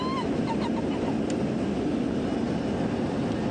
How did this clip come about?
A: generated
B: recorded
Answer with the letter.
B